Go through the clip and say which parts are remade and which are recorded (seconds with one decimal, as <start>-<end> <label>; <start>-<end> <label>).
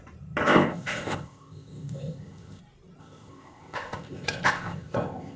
0.0-0.4 recorded; 0.4-2.6 remade; 2.6-3.0 recorded; 3.0-5.4 remade